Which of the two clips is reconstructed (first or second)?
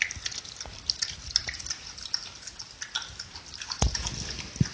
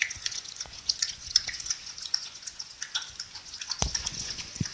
second